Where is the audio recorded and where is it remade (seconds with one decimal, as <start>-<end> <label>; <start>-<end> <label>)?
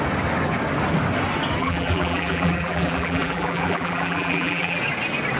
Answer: 0.0-1.6 recorded; 1.6-4.8 remade; 4.8-5.4 recorded